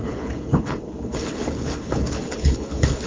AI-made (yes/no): yes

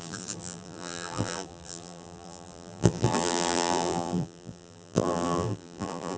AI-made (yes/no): yes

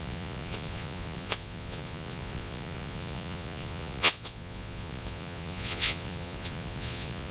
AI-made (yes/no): yes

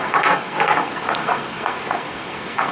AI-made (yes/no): yes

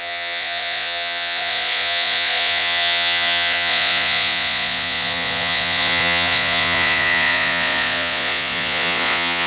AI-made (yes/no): yes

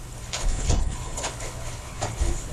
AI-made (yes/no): yes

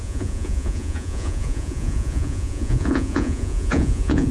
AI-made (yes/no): yes